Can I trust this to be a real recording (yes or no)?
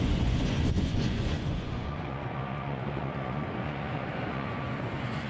no